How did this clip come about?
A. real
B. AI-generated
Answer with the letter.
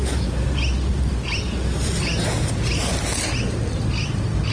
A